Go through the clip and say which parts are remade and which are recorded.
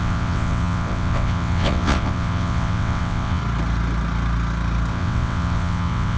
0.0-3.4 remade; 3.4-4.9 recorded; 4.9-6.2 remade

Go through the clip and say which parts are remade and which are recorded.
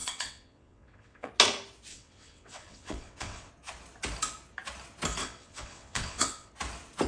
0.0-1.3 remade; 1.3-1.9 recorded; 1.9-3.5 remade; 3.5-5.2 recorded; 5.2-6.5 remade; 6.5-7.1 recorded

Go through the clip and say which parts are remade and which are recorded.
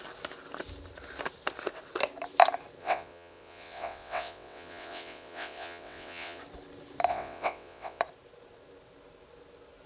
0.0-2.8 recorded; 2.8-6.4 remade; 6.4-7.1 recorded; 7.1-8.0 remade; 8.0-9.9 recorded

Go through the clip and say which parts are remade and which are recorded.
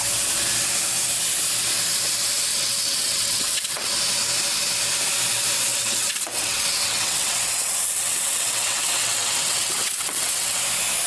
0.0-2.5 recorded; 2.5-3.9 remade; 3.9-5.7 recorded; 5.7-10.6 remade; 10.6-11.1 recorded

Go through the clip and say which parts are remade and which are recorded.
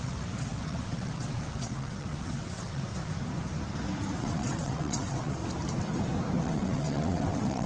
0.0-2.9 remade; 2.9-4.2 recorded; 4.2-5.4 remade; 5.4-6.4 recorded; 6.4-7.7 remade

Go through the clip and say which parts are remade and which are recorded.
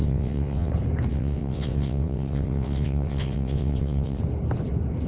0.0-0.7 remade; 0.7-1.1 recorded; 1.1-4.2 remade; 4.2-5.1 recorded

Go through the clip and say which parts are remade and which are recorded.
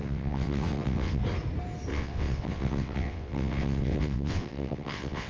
0.0-1.2 remade; 1.2-1.9 recorded; 1.9-5.3 remade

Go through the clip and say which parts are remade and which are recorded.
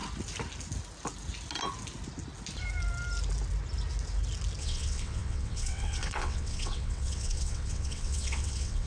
0.0-4.6 recorded; 4.6-8.9 remade